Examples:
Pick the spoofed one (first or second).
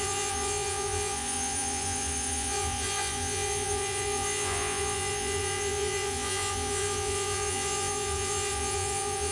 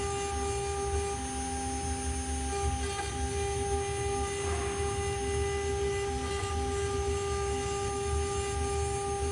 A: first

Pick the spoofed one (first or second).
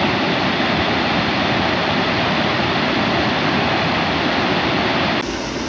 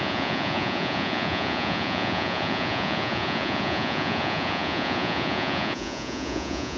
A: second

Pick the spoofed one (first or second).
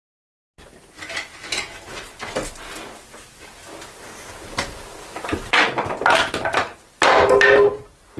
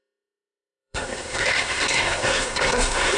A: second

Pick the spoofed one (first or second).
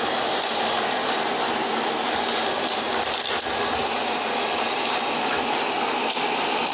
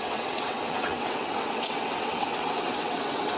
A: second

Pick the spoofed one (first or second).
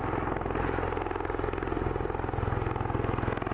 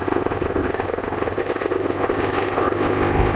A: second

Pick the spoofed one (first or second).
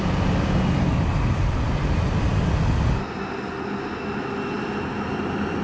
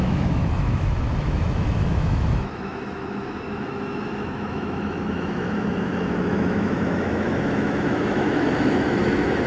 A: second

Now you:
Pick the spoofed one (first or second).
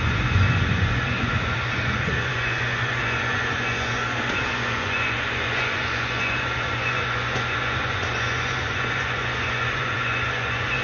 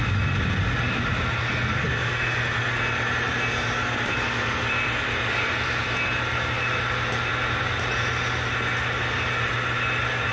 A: first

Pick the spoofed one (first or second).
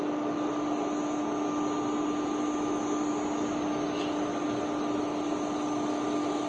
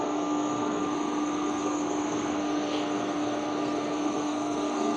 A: second